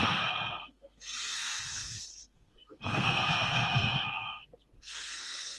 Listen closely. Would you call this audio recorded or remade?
remade